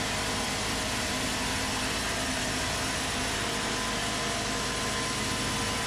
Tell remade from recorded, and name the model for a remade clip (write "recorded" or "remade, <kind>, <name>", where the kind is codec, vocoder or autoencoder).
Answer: recorded